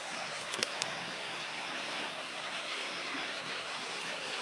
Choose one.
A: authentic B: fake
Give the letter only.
B